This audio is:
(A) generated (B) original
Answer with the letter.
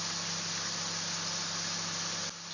B